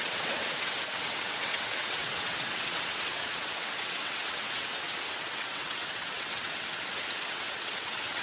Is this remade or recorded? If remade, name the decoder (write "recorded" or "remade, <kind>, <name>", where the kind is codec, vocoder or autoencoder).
remade, vocoder, WaveNeXt